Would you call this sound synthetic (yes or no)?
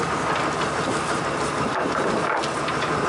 no